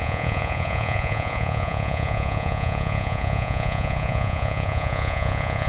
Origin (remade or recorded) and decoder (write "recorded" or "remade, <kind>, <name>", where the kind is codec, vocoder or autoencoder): remade, vocoder, Vocos